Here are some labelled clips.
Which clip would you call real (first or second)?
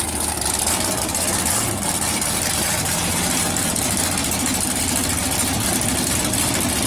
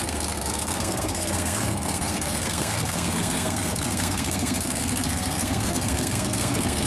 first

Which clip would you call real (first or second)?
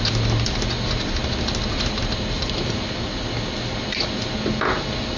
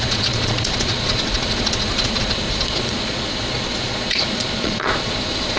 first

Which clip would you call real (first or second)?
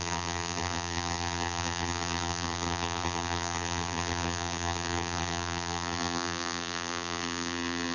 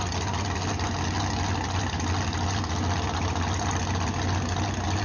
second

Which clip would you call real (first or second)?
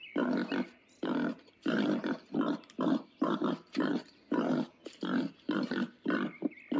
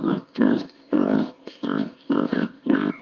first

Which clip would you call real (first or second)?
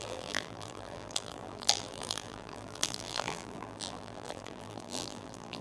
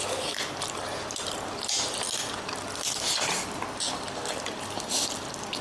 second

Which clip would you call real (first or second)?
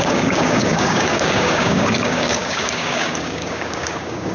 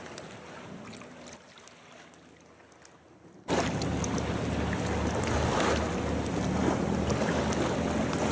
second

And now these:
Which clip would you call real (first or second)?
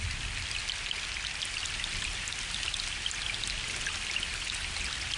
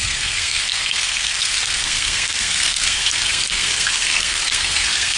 first